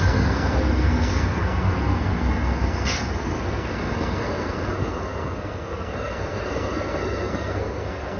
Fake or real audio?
fake